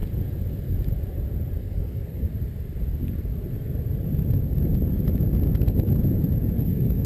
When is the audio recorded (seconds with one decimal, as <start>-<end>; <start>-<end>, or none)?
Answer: 0.0-1.6; 2.3-6.6